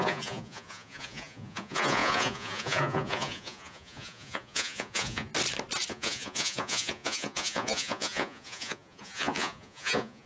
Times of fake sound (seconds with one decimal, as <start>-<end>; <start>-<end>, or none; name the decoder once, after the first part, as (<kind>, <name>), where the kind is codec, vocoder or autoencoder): 0.0-5.3 (vocoder, Vocos); 5.9-10.3